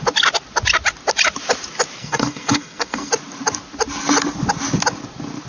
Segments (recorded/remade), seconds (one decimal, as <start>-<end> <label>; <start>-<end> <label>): 0.0-2.0 recorded; 2.0-3.1 remade; 3.1-5.5 recorded